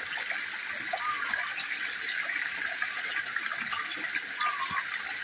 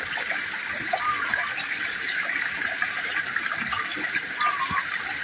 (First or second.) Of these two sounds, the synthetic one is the second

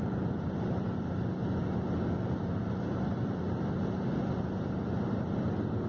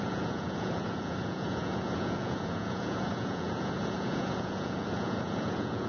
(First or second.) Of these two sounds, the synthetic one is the second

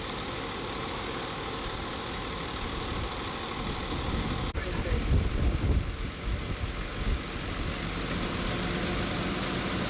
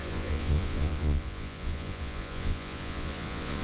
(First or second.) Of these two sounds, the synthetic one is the second